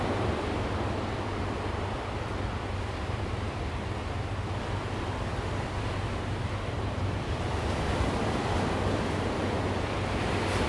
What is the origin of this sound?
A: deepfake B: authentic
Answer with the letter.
A